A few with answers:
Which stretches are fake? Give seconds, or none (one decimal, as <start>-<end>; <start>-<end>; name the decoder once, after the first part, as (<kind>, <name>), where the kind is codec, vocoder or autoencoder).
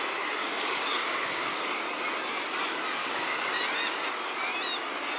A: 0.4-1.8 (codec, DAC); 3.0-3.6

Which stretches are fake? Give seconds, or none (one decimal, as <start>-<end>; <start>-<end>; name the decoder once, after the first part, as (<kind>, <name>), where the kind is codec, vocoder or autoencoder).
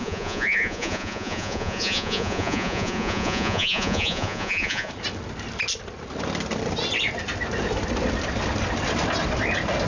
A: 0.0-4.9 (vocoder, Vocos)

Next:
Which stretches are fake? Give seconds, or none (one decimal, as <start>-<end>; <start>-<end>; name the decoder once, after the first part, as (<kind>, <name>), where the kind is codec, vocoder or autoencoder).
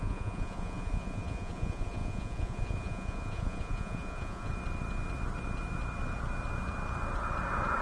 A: 0.0-4.5 (vocoder, Vocos)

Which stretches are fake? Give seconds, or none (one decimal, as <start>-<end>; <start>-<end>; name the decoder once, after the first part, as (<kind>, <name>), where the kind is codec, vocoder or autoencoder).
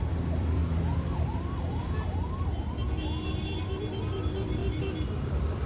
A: 0.0-0.6 (vocoder, BigVGAN v2); 4.0-5.7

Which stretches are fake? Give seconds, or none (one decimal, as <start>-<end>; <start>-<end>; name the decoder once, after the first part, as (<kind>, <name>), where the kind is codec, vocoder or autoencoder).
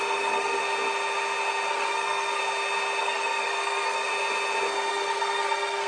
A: 0.0-0.6 (codec, SNAC); 1.7-2.4; 3.0-4.1; 4.9-5.9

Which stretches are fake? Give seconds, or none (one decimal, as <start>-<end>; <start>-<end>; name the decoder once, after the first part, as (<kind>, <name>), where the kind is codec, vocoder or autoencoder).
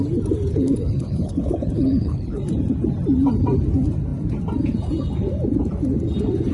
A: 0.5-2.4 (codec, HILCodec)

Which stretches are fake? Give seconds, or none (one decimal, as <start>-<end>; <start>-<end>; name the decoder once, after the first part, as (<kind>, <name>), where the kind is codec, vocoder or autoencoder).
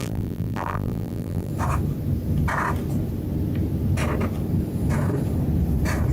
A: 0.0-1.5 (vocoder, BigVGAN v2)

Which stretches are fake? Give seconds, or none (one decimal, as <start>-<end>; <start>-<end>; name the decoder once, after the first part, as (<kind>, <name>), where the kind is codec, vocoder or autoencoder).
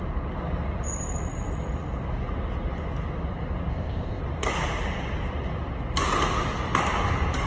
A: 3.7-4.2 (codec, ZipCodec)